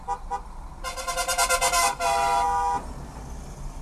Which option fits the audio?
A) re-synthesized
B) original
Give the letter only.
B